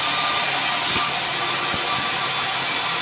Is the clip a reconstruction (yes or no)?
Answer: no